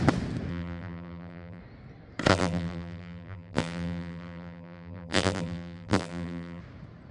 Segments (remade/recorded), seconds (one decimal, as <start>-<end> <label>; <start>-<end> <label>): 0.0-0.5 recorded; 0.5-1.6 remade; 1.6-2.3 recorded; 2.3-6.6 remade; 6.6-7.1 recorded